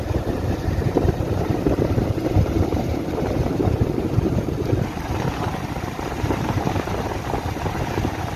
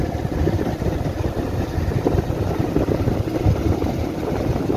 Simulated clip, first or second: first